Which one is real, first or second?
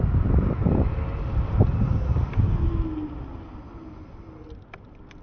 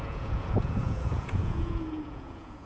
first